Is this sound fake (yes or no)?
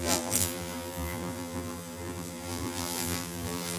yes